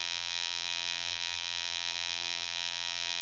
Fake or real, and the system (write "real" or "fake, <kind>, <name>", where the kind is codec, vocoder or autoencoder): fake, vocoder, BigVGAN v2